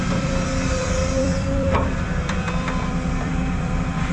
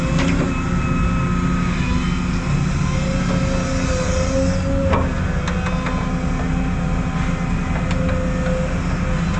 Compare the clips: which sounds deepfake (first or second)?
first